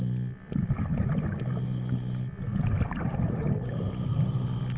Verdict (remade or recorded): recorded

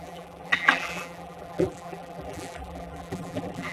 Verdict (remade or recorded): remade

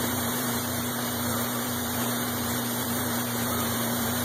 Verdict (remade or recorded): remade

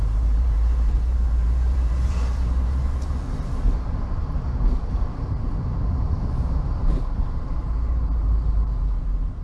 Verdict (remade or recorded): remade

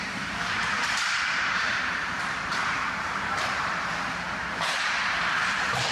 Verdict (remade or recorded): remade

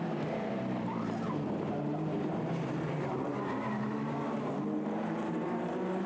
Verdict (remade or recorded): remade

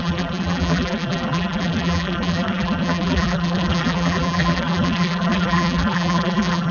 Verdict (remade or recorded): remade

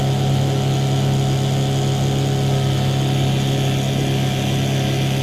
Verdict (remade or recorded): recorded